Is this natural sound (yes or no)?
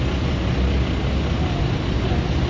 yes